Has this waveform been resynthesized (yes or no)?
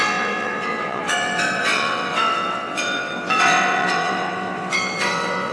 yes